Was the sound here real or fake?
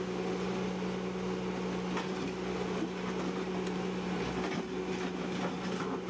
real